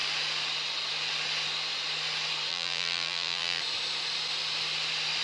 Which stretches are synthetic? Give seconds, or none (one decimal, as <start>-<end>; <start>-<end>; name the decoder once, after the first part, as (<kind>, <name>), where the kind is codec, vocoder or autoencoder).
2.5-3.6 (vocoder, BigVGAN v2)